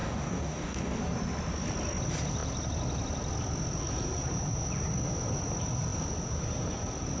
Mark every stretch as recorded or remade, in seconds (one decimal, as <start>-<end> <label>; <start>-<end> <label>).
0.0-1.0 remade; 1.0-7.2 recorded